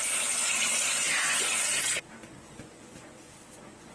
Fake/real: fake